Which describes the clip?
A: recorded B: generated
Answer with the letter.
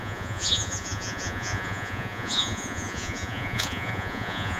B